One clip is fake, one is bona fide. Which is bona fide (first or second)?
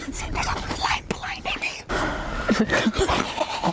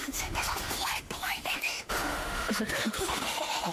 first